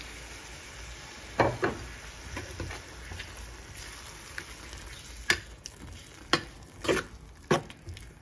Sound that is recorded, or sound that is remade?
recorded